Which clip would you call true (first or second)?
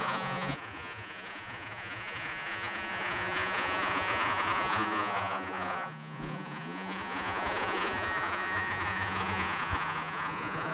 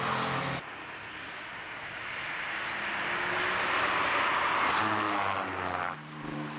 second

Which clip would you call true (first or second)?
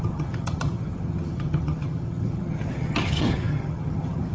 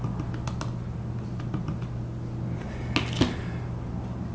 second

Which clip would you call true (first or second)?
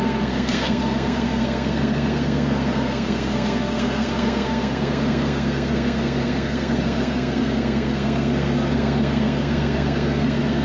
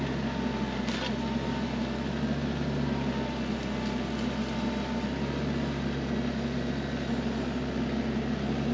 second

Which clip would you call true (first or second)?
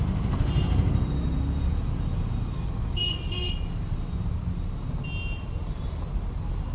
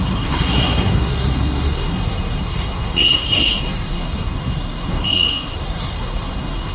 first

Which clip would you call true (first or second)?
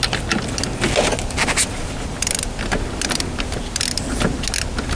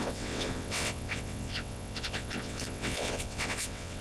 first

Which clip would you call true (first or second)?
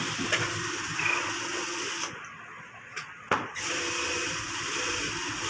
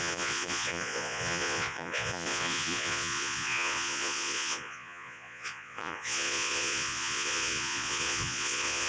first